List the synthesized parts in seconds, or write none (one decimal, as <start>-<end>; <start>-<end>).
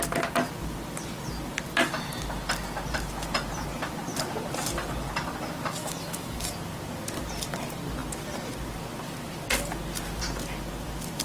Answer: 5.8-6.4